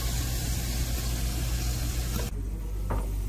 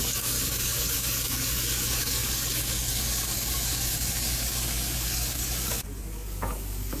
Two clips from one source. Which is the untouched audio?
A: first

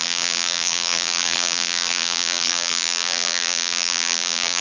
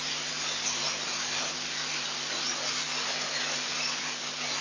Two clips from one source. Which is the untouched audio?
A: second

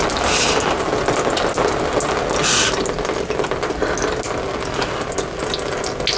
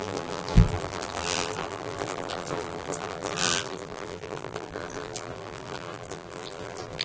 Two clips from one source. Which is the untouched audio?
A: first